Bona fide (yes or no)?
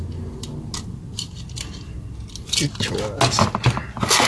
yes